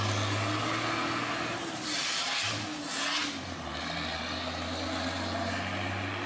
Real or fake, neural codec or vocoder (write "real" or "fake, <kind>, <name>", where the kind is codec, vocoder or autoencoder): real